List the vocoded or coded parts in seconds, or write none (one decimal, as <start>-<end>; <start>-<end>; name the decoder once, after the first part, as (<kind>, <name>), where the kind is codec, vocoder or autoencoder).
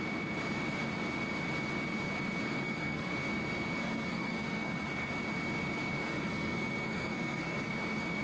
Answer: 2.4-3.1 (codec, SNAC); 3.8-5.1; 6.0-7.7